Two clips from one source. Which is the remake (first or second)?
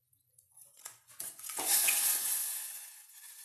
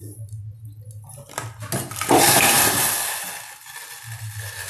first